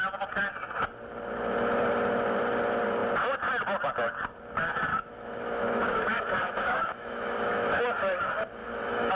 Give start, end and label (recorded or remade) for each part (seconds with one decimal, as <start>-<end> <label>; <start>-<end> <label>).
0.0-4.9 recorded; 4.9-7.8 remade; 7.8-8.6 recorded; 8.6-9.1 remade